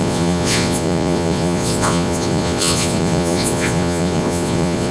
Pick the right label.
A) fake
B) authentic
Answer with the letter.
A